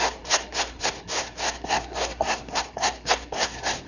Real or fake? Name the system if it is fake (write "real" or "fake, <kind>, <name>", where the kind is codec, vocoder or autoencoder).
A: fake, codec, SNAC